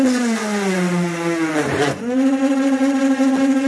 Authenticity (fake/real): fake